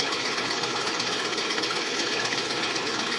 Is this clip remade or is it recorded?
remade